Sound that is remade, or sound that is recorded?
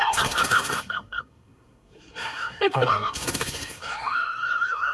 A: remade